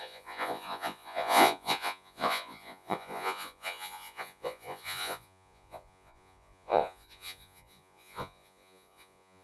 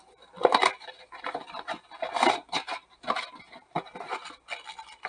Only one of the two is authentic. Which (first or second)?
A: second